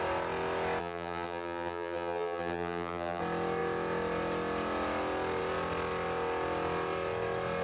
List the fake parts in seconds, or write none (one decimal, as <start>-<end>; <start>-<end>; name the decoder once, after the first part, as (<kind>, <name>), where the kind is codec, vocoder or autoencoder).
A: 0.8-3.2 (vocoder, BigVGAN v2)